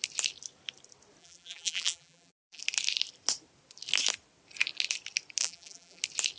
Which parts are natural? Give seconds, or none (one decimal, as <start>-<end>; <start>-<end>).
0.0-1.2; 2.6-5.4; 6.0-6.4